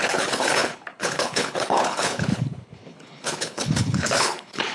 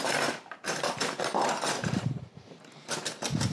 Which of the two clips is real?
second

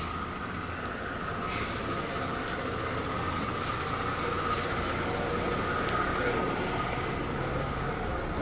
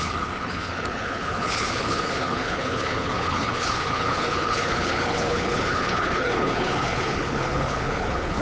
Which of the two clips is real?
first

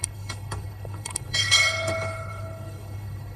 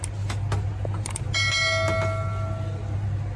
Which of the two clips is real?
second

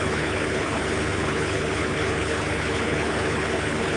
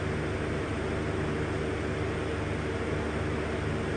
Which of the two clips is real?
second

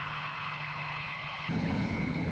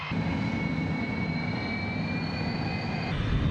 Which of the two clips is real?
second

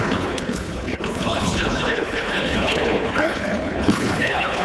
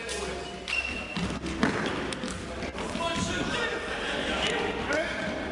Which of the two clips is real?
second